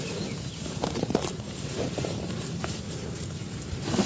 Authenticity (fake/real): fake